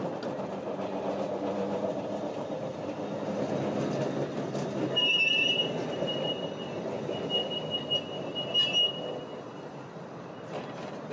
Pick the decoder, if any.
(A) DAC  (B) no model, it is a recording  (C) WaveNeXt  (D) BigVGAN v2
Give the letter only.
B